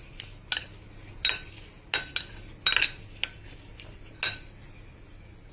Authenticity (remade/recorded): recorded